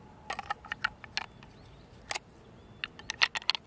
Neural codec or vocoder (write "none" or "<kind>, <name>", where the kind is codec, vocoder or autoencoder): none